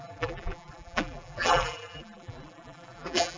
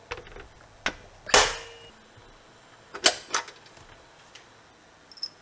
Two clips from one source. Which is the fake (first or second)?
first